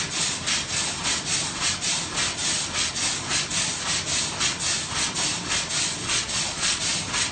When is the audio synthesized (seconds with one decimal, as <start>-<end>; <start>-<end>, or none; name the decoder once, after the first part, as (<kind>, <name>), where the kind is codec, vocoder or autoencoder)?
6.0-6.8 (vocoder, Vocos)